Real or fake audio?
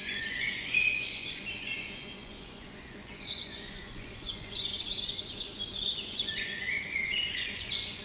fake